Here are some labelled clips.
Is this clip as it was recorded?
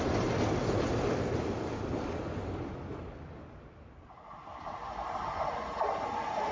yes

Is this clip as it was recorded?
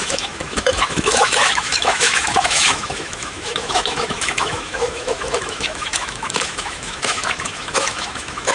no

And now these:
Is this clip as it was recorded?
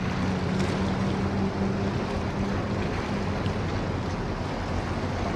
yes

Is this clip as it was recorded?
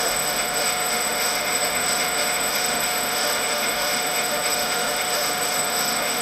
no